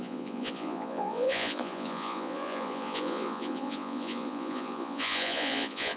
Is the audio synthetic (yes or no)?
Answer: yes